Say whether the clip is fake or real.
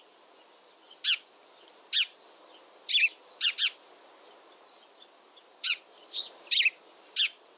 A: real